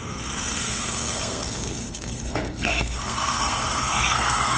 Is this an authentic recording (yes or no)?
no